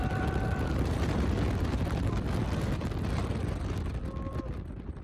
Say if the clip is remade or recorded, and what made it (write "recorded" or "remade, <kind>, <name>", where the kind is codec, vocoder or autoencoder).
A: recorded